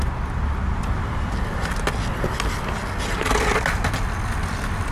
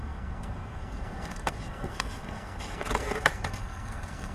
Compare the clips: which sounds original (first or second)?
first